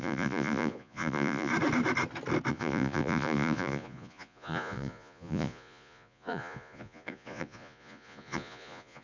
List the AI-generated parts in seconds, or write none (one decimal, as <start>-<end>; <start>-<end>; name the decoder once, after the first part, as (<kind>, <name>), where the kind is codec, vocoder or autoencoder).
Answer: 0.0-1.5 (vocoder, Vocos); 2.5-9.0